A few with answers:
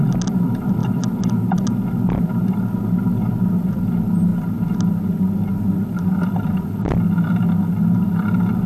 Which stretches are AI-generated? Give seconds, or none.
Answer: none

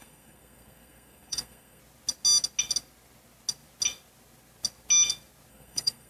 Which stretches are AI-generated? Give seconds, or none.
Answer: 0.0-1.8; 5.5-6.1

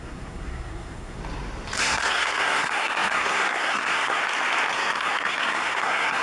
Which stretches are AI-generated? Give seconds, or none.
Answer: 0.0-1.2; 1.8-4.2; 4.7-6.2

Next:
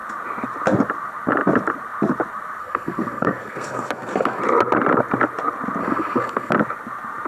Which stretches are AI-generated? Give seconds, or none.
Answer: 2.6-4.4; 5.8-6.5

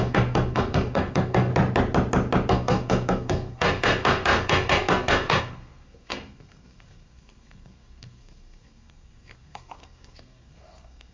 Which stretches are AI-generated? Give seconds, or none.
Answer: 0.0-1.5; 2.5-11.1

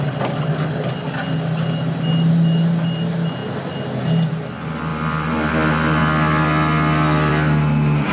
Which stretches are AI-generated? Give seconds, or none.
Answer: none

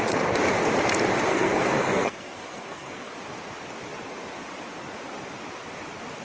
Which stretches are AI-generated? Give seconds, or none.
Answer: 1.3-3.1

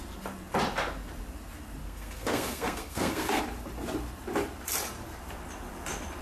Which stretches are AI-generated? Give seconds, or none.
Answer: 1.8-3.4